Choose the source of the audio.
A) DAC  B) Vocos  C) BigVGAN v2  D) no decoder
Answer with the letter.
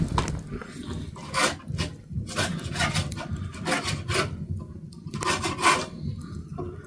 D